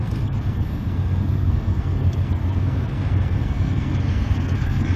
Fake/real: fake